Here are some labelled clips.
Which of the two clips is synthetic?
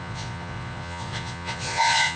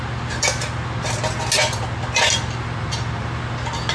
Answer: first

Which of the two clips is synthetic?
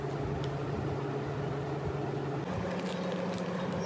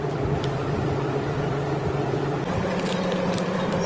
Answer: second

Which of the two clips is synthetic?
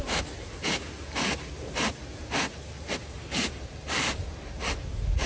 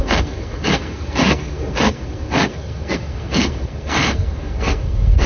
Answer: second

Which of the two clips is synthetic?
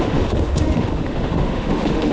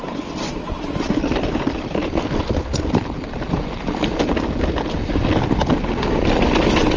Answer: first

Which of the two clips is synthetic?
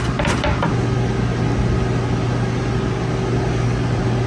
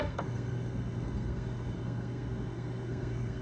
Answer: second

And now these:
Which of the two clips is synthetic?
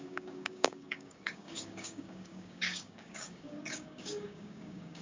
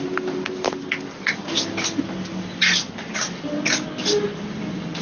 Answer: first